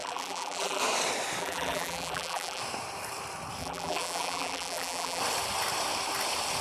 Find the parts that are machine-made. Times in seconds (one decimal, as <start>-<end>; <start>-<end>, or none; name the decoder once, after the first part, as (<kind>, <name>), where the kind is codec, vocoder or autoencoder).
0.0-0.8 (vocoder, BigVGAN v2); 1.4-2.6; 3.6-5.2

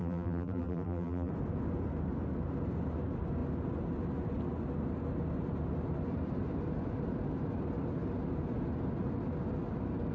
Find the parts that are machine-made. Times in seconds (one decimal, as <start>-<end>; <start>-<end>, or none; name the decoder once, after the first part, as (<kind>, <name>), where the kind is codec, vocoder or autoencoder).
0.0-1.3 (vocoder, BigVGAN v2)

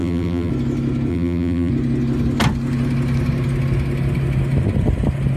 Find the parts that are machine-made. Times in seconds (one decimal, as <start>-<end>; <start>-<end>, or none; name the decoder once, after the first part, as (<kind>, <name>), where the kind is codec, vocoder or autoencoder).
0.0-0.5 (vocoder, BigVGAN v2); 1.1-1.7

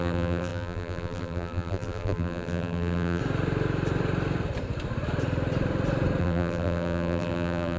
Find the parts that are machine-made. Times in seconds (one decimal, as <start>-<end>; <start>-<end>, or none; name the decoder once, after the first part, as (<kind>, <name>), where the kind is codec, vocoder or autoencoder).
0.0-3.2 (vocoder, BigVGAN v2); 6.2-7.8